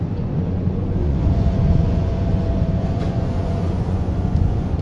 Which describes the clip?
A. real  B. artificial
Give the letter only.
B